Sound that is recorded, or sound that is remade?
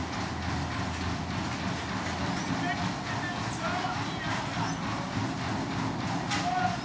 recorded